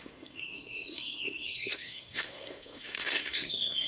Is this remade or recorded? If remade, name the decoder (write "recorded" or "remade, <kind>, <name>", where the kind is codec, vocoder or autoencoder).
remade, codec, SNAC